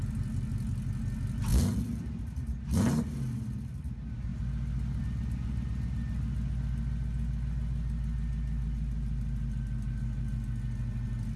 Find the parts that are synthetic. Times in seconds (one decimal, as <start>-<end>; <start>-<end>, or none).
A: none